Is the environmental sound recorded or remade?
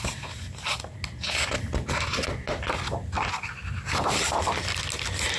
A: recorded